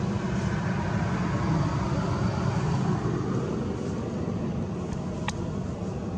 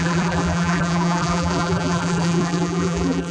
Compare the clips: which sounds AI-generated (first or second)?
second